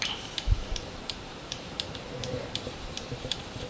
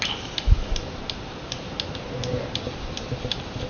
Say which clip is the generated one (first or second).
first